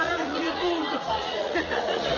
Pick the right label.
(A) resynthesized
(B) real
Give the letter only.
A